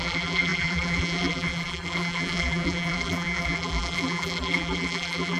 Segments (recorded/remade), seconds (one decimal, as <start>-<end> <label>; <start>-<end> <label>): 0.0-5.4 remade